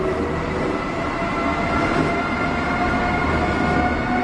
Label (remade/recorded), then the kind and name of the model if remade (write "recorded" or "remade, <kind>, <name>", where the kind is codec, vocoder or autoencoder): recorded